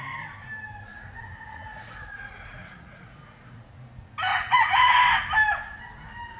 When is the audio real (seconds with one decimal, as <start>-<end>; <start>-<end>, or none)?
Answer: 0.0-0.9; 3.7-4.3; 5.0-6.4